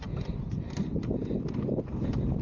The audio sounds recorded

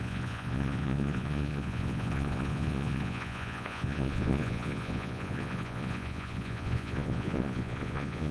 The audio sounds remade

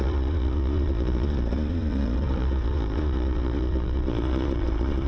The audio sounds remade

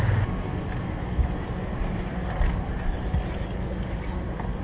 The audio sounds recorded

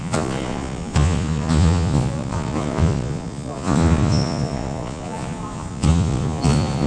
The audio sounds remade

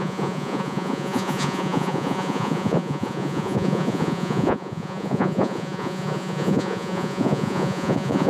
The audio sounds remade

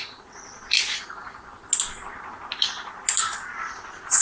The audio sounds recorded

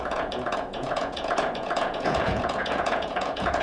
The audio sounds remade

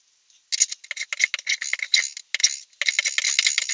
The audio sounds recorded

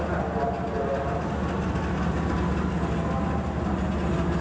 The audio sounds recorded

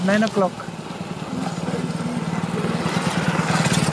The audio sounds recorded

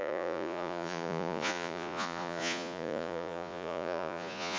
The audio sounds remade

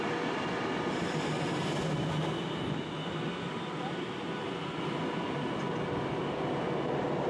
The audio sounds recorded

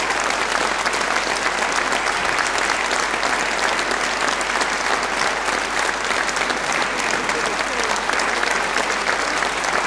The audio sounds recorded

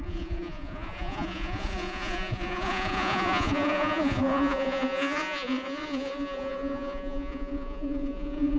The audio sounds remade